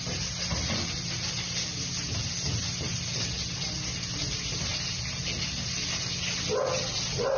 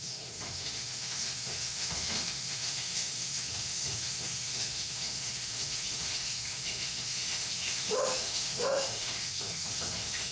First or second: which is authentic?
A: first